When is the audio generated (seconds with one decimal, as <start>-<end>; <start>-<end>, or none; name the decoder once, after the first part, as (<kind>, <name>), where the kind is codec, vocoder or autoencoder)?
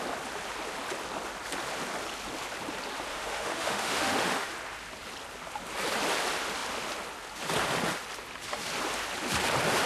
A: 3.1-4.5 (autoencoder, DAC-VAE)